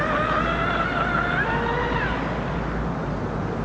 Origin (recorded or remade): recorded